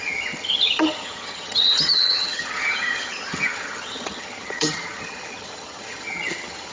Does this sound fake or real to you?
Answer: fake